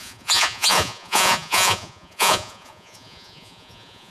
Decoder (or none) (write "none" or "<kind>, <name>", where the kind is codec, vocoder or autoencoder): vocoder, Vocos